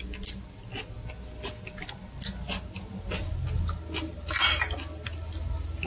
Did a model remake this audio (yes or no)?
no